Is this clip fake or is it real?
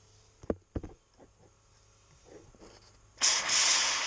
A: real